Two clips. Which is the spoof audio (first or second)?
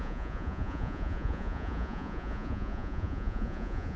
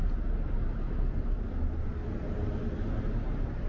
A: first